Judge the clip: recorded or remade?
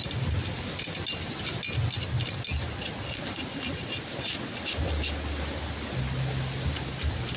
recorded